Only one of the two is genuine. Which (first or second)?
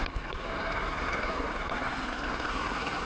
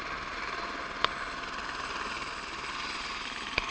second